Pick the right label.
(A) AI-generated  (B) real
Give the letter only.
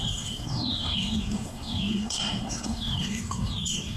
A